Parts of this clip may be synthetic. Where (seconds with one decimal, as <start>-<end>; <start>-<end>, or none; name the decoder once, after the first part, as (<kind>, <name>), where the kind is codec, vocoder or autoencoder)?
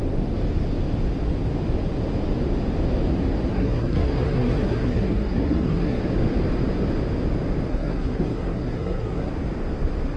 3.5-6.0 (codec, SNAC); 7.7-9.3